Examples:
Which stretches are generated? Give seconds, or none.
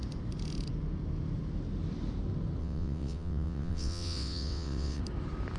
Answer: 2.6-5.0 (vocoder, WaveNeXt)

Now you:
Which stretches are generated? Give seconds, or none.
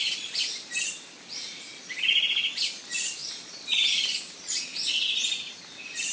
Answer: 3.2-3.9 (vocoder, Vocos)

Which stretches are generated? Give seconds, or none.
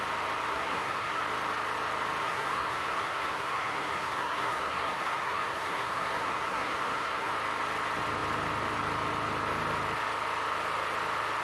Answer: 0.5-1.2 (codec, SNAC); 2.2-7.3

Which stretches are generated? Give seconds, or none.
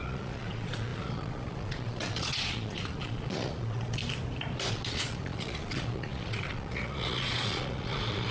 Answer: 0.0-4.0 (vocoder, Vocos); 4.7-8.3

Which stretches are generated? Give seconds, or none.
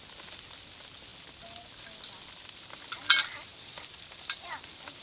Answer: 1.1-2.8 (vocoder, BigVGAN v2); 3.5-4.5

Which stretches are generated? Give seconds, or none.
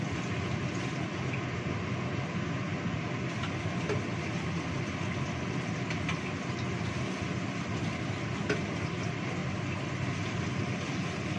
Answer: none